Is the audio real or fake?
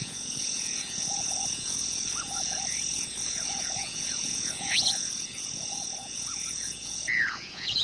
fake